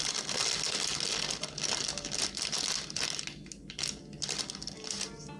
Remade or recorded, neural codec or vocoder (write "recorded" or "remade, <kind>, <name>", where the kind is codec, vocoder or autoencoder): recorded